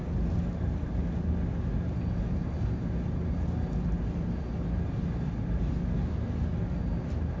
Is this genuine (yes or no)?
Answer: yes